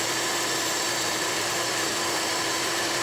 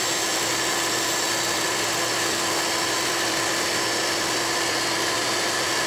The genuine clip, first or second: second